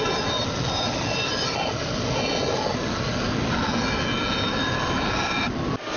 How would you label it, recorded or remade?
recorded